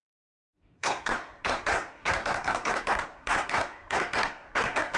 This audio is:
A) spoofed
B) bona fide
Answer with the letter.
A